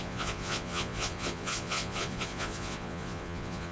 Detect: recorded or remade remade